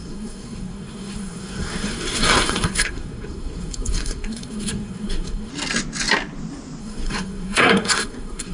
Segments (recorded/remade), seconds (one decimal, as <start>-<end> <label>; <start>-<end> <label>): 0.0-5.5 remade; 5.5-6.8 recorded; 6.8-8.5 remade